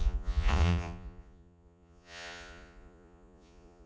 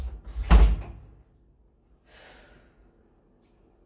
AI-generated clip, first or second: first